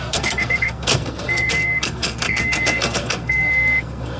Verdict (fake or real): fake